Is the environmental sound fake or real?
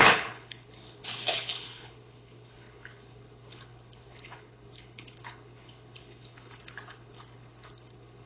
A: fake